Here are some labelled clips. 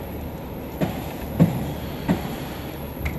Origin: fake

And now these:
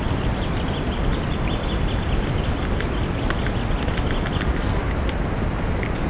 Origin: real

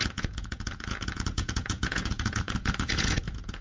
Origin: fake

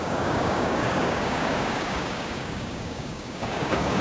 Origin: fake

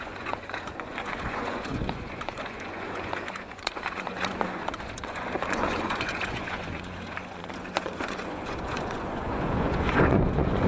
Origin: fake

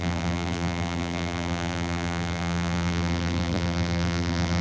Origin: fake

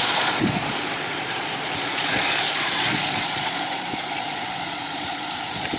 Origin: fake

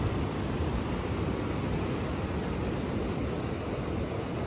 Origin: fake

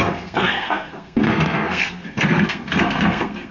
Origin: fake